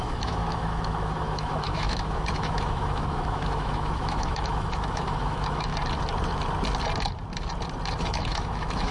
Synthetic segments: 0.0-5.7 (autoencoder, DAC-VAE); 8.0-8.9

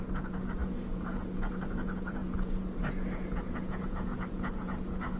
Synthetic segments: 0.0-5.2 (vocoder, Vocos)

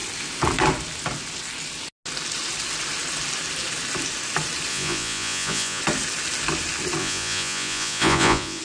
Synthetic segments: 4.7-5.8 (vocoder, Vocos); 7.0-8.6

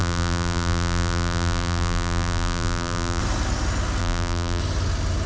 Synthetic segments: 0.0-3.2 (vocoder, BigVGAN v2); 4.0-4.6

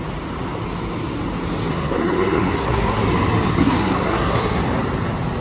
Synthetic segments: 1.7-3.0 (codec, SNAC); 3.5-4.6